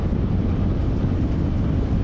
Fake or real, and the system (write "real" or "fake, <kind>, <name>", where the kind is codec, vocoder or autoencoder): real